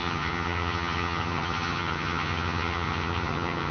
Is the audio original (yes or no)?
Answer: no